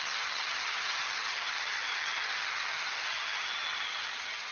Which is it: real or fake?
fake